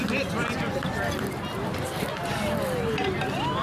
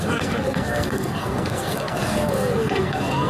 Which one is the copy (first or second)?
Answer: second